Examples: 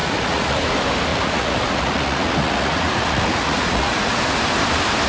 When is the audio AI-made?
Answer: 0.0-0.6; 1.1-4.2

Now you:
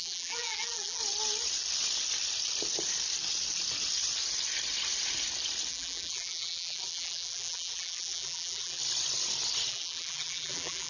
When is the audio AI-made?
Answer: 0.0-1.0; 5.7-8.8; 9.7-10.9

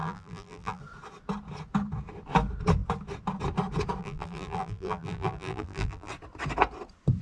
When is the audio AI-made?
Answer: 0.0-0.8; 4.0-6.1

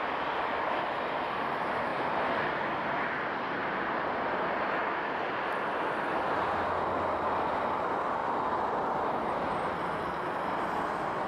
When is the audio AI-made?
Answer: none

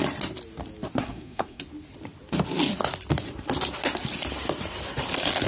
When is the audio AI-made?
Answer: 1.0-1.6

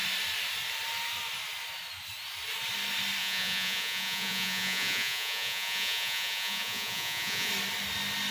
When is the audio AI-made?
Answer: 3.2-7.5